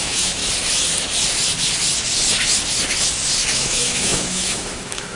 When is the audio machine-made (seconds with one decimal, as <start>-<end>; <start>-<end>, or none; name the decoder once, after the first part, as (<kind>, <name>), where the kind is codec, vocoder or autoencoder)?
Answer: 0.0-0.4 (autoencoder, DAC-VAE); 3.5-5.2